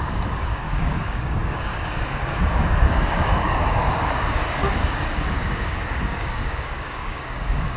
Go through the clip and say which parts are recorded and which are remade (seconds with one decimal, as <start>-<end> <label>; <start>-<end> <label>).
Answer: 0.0-7.8 remade